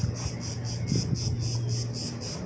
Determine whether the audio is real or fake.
real